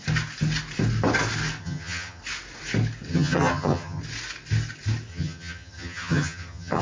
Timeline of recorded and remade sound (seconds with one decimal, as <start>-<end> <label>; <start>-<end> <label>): 0.0-1.6 recorded; 1.6-2.2 remade; 2.2-3.1 recorded; 3.1-4.0 remade; 4.0-5.1 recorded; 5.1-6.8 remade